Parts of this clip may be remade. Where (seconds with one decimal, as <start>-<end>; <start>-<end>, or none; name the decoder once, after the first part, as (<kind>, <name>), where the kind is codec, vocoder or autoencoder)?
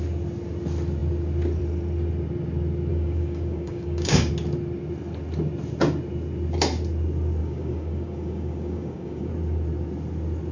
2.9-4.3 (codec, DAC); 7.4-9.3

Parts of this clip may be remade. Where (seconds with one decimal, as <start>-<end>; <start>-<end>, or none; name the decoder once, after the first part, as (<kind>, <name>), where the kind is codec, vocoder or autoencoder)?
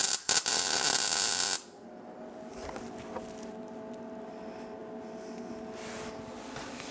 none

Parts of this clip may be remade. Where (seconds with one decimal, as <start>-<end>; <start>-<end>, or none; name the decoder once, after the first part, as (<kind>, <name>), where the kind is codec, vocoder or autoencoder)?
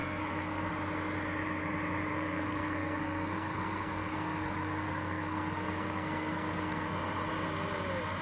0.0-0.7 (codec, SNAC); 2.1-7.0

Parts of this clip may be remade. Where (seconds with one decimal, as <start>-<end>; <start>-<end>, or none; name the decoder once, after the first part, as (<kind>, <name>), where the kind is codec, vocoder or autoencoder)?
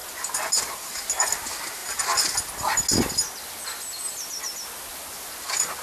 none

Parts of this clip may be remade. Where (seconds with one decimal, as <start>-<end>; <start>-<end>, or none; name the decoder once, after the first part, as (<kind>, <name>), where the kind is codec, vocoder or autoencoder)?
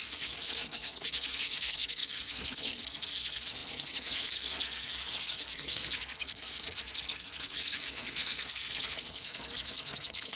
0.0-10.4 (codec, SNAC)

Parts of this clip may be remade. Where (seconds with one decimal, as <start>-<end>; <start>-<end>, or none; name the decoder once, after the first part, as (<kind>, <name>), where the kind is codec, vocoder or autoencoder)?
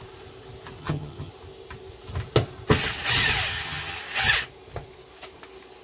0.8-1.3 (vocoder, HiFi-GAN); 3.5-4.0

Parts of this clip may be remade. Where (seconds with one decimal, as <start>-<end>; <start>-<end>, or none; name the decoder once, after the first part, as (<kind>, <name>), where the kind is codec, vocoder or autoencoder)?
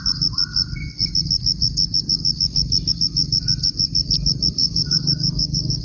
4.6-5.8 (codec, DAC)